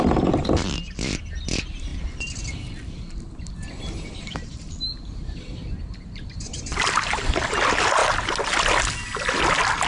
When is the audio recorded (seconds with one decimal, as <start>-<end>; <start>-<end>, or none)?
0.0-9.9